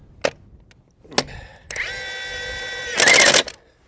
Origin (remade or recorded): recorded